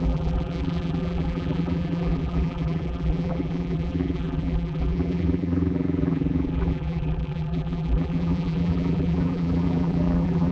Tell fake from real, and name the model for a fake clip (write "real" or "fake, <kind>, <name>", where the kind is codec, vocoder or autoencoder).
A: fake, vocoder, BigVGAN v2